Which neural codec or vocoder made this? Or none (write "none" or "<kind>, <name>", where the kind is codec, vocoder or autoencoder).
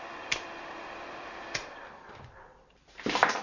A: vocoder, BigVGAN v2